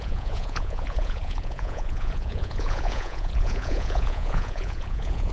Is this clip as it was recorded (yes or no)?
no